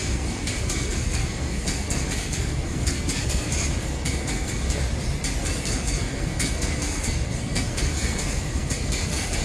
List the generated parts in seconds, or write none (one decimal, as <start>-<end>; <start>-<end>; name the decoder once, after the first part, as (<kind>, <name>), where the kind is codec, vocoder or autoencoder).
0.0-4.8 (codec, SNAC); 5.4-9.4